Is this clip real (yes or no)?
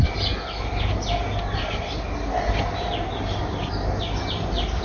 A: yes